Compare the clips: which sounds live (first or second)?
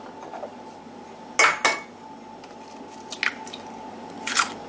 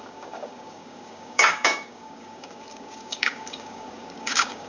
first